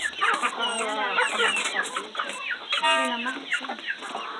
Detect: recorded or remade recorded